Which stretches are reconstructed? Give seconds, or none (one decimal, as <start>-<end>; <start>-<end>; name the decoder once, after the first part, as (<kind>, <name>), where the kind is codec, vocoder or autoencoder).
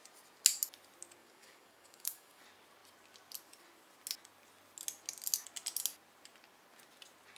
1.2-2.4 (codec, DAC)